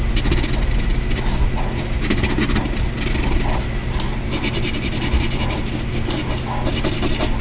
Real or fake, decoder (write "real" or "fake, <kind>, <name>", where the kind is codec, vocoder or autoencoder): real